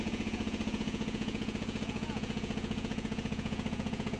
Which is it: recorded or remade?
remade